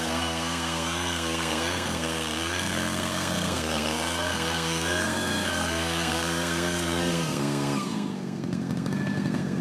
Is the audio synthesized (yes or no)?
yes